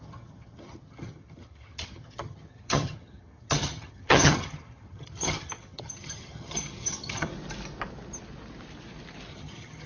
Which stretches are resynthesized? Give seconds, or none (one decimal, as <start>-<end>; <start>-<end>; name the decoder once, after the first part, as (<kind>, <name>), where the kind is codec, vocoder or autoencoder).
0.0-7.3 (vocoder, HiFi-GAN); 9.3-9.9